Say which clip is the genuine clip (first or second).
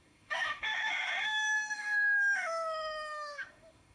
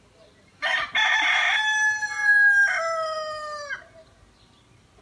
second